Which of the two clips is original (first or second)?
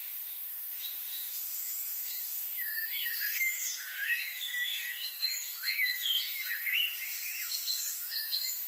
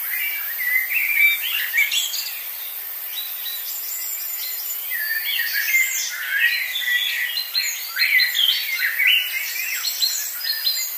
second